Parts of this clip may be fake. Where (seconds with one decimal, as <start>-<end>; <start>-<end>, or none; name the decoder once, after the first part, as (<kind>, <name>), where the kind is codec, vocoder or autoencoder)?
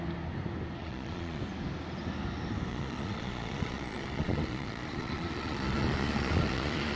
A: 0.8-1.4 (vocoder, Vocos); 2.7-7.0